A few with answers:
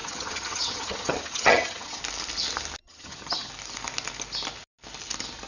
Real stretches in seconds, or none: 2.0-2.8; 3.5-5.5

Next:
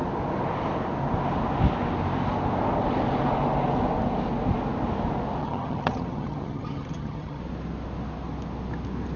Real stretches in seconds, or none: 0.0-5.4; 7.4-9.2

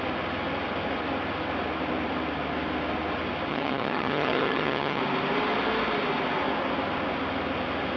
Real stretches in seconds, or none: 0.0-3.5; 5.0-8.0

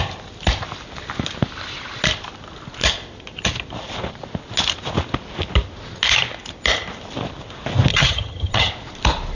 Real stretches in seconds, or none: 0.0-7.9; 8.7-9.3

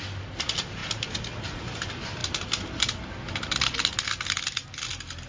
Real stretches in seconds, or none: 0.0-5.3

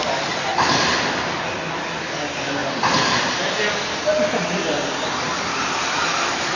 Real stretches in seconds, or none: 0.0-6.6